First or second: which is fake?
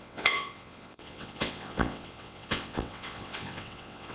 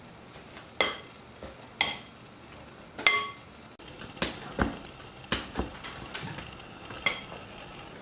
first